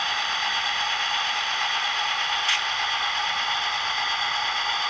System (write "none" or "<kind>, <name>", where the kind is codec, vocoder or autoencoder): none